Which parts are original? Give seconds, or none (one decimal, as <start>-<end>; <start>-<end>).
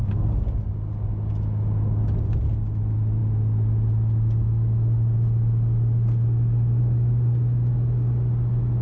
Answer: 0.0-8.8